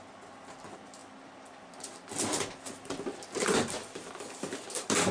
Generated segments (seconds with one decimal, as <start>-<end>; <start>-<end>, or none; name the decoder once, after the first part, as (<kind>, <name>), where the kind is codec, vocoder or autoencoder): none